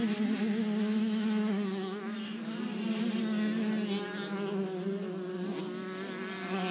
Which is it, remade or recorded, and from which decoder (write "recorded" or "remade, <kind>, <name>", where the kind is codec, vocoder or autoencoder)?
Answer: recorded